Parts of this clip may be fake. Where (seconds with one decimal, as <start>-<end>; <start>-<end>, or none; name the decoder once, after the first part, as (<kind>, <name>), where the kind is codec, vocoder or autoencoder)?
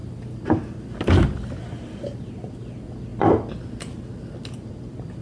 none